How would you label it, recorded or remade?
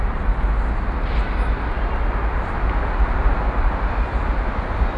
recorded